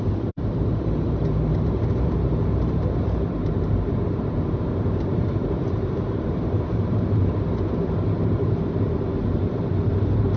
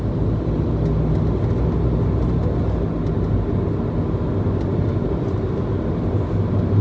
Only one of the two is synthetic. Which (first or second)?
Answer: first